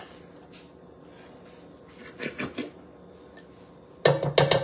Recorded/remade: recorded